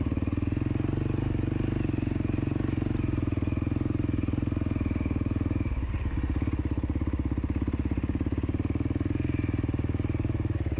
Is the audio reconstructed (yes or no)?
no